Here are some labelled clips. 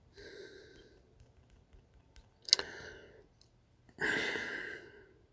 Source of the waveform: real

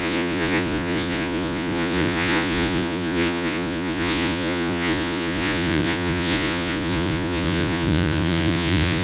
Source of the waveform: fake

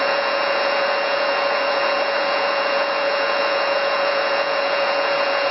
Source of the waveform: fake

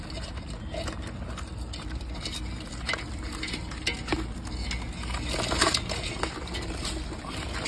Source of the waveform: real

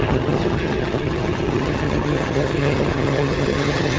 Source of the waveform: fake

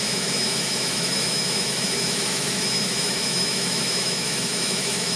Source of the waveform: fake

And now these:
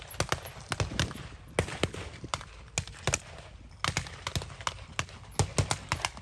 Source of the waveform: real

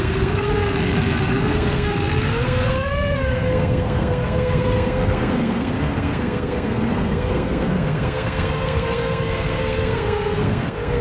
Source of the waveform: fake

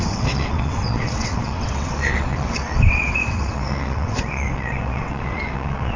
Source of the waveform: fake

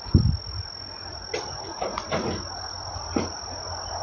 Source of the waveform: real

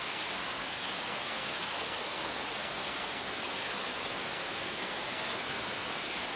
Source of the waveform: fake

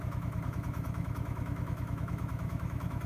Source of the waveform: fake